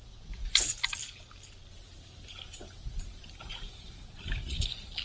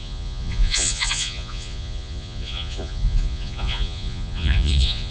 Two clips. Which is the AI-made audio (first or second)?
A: second